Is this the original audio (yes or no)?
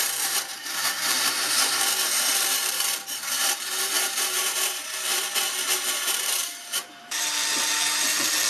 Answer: no